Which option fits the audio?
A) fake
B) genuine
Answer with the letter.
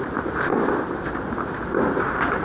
B